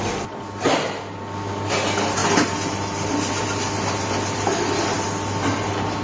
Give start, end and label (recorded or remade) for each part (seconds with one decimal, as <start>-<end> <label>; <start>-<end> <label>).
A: 0.0-2.2 recorded; 2.2-3.1 remade; 3.1-6.0 recorded